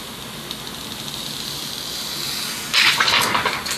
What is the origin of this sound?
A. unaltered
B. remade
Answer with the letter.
A